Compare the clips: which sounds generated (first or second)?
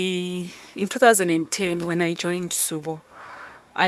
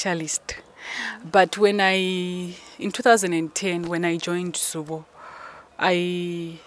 first